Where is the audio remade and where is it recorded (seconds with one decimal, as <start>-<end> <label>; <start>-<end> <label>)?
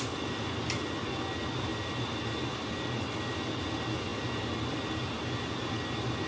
0.0-6.3 recorded